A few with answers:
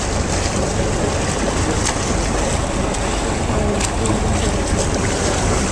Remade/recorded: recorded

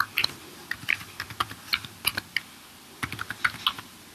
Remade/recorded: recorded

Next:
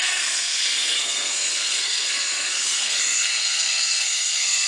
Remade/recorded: remade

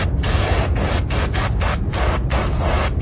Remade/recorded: recorded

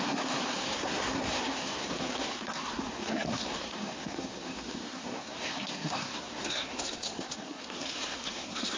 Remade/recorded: remade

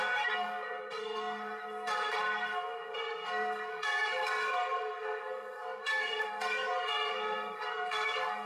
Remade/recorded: remade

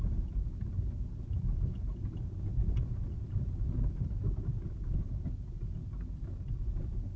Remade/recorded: recorded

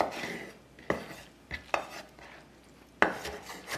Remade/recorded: recorded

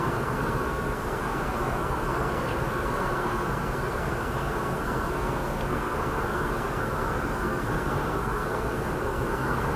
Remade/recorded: remade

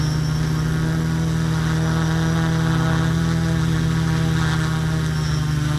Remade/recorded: recorded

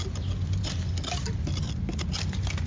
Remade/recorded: recorded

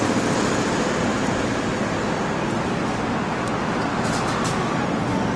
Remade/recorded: recorded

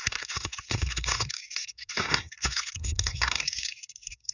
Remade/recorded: remade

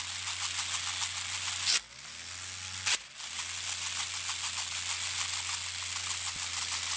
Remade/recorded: recorded